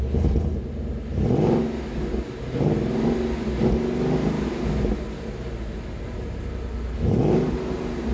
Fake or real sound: real